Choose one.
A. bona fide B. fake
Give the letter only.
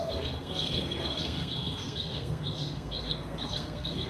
B